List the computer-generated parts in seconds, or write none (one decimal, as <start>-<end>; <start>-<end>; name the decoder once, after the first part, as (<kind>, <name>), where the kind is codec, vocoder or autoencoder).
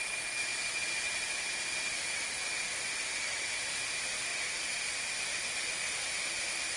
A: none